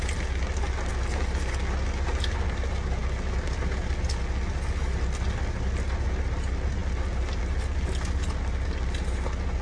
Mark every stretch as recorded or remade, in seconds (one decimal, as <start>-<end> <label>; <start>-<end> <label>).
0.0-9.6 recorded